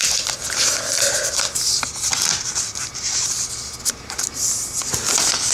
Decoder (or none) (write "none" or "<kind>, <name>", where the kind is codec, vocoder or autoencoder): none